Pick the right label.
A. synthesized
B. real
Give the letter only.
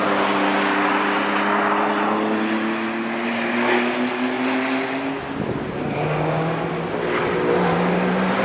B